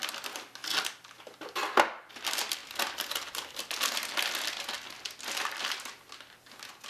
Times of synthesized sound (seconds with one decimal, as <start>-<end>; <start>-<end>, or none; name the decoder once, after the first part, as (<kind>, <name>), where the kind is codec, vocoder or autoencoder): none